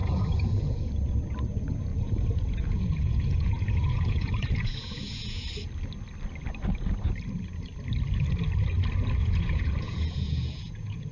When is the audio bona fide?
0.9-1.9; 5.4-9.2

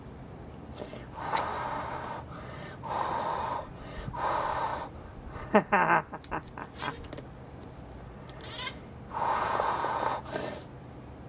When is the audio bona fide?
0.0-9.1; 10.3-11.3

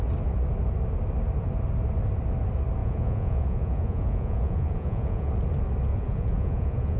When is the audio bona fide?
0.0-2.8; 5.3-5.9

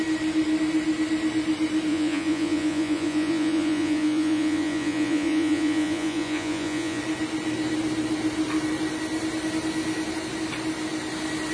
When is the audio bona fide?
0.0-1.9; 7.0-11.5

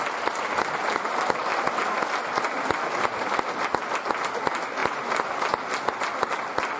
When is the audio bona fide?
0.0-6.8

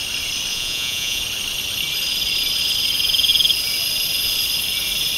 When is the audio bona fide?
0.0-0.5; 1.2-5.2

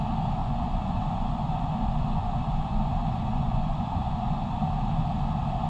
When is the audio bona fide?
0.0-0.4; 2.9-3.3; 4.6-5.7